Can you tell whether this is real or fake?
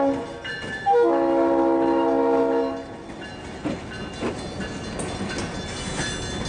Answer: real